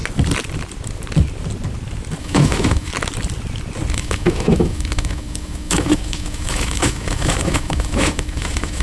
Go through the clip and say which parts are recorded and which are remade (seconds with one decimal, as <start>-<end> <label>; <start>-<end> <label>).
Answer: 0.0-2.2 recorded; 2.2-2.9 remade; 2.9-3.9 recorded; 3.9-8.8 remade